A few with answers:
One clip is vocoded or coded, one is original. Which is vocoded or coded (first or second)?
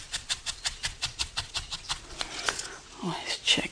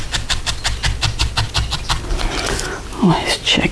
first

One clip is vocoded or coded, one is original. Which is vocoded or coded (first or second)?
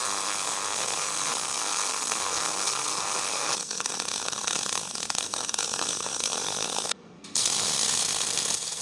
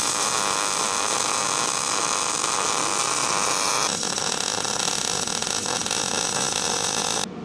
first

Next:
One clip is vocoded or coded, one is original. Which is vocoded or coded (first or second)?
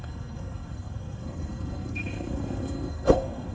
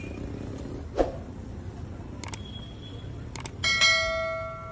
first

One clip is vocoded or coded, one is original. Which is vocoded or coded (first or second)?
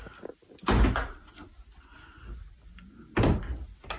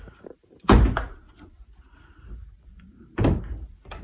second